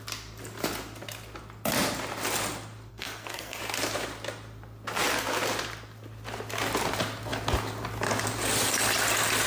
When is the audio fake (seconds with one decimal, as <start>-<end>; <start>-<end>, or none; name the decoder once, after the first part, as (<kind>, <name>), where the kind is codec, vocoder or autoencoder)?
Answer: 2.9-3.6 (codec, SNAC)